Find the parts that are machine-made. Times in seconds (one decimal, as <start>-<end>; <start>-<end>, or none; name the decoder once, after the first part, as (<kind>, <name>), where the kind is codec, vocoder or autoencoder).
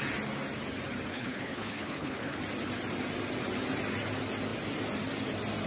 1.1-2.4 (codec, HILCodec)